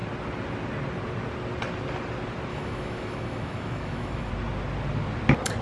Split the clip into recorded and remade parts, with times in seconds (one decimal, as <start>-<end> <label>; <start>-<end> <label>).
0.0-2.5 recorded; 2.5-4.3 remade; 4.3-5.6 recorded